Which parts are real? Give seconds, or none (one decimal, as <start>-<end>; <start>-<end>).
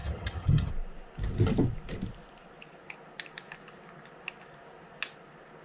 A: 0.7-5.6